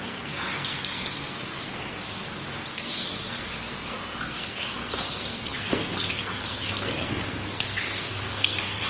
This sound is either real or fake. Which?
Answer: fake